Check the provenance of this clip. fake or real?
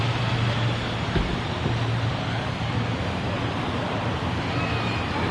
real